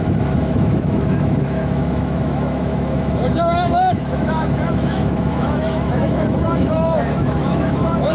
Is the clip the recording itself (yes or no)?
no